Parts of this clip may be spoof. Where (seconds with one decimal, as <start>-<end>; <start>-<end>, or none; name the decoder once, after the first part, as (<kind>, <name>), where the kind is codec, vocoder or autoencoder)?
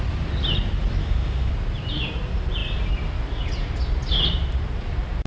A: 1.0-1.5 (autoencoder, DAC-VAE)